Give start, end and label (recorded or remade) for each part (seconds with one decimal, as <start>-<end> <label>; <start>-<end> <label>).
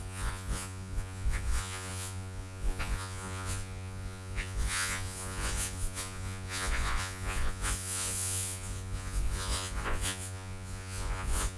0.0-11.6 remade